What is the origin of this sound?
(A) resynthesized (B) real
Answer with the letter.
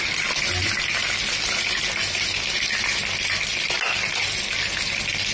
B